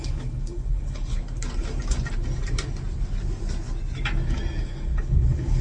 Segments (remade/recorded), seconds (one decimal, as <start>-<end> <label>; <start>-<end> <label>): 0.0-1.2 remade; 1.2-4.6 recorded; 4.6-5.6 remade